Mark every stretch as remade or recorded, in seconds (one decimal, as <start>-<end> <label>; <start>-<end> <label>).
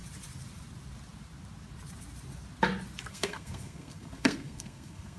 0.0-3.1 recorded; 3.1-5.2 remade